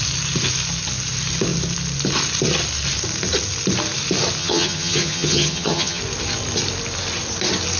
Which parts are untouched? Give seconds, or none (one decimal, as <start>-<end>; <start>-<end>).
0.0-4.4; 6.0-7.8